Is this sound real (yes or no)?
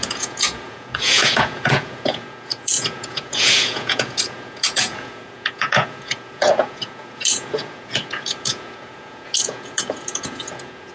no